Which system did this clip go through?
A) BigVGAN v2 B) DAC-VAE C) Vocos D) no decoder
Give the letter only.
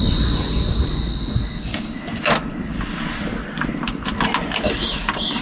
D